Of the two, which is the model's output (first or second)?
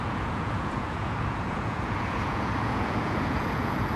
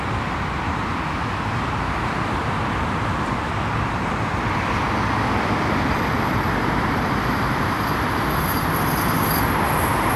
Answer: first